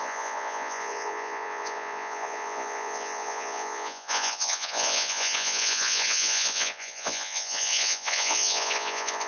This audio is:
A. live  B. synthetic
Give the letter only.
B